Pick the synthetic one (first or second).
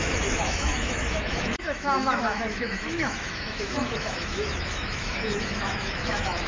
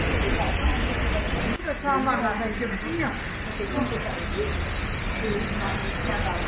first